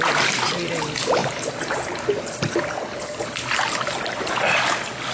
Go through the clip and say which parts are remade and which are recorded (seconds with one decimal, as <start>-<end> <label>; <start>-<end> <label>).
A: 0.0-5.1 recorded